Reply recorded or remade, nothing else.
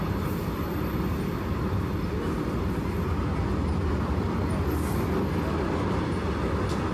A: recorded